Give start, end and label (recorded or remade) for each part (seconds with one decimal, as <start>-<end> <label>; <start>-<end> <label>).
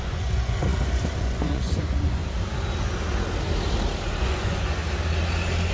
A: 0.0-2.2 remade; 2.2-4.2 recorded; 4.2-4.8 remade; 4.8-5.7 recorded